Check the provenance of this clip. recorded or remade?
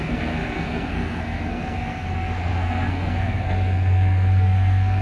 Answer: remade